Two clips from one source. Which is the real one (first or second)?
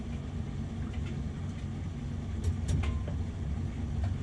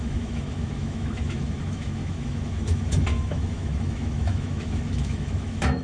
first